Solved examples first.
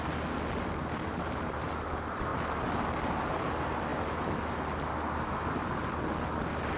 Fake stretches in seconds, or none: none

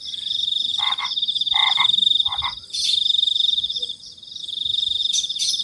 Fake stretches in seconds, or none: none

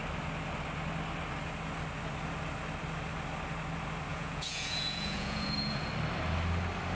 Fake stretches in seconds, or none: 4.1-5.9 (vocoder, Vocos)

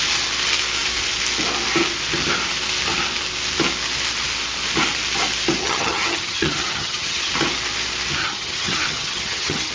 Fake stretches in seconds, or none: 5.6-7.3 (vocoder, HiFi-GAN); 8.2-9.7

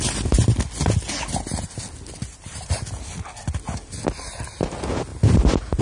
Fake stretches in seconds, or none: none

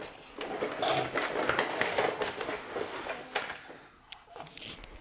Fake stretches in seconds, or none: 1.7-3.1 (autoencoder, DAC-VAE)

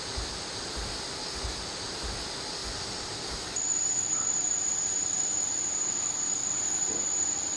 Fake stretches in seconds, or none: 2.6-7.6 (vocoder, BigVGAN v2)